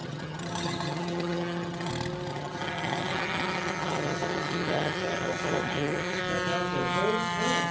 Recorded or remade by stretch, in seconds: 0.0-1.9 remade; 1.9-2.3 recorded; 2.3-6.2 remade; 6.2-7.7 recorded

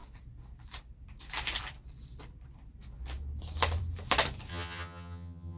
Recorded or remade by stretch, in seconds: 0.0-4.5 recorded; 4.5-5.6 remade

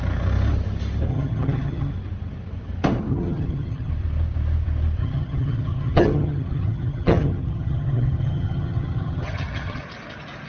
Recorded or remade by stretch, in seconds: 0.0-1.1 recorded; 1.1-1.9 remade; 1.9-3.1 recorded; 3.1-3.9 remade; 3.9-5.0 recorded; 5.0-9.8 remade; 9.8-10.5 recorded

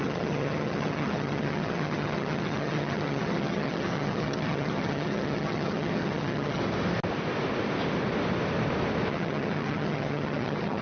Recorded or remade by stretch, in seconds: 0.0-6.6 remade; 6.6-9.1 recorded; 9.1-10.8 remade

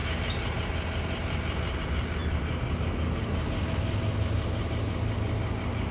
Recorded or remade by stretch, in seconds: 0.0-5.9 recorded

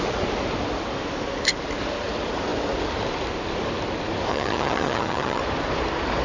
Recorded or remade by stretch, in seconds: 0.0-4.3 recorded; 4.3-5.4 remade; 5.4-6.2 recorded

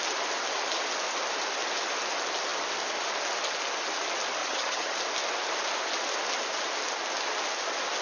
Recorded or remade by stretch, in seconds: 0.0-4.4 recorded; 4.4-5.0 remade; 5.0-8.0 recorded

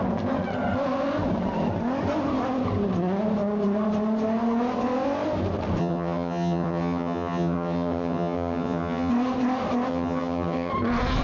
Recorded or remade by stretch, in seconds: 0.0-5.8 recorded; 5.8-9.1 remade; 9.1-9.9 recorded; 9.9-10.7 remade; 10.7-11.2 recorded